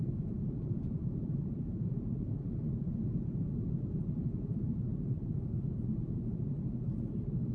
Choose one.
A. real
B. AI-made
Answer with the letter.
B